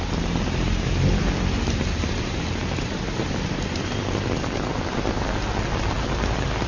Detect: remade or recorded recorded